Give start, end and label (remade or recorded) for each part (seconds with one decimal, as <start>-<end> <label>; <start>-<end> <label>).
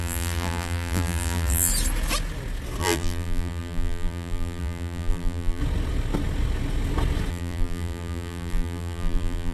0.0-1.7 remade; 1.7-2.8 recorded; 2.8-5.6 remade; 5.6-7.3 recorded; 7.3-9.5 remade